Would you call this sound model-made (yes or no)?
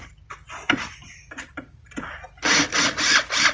no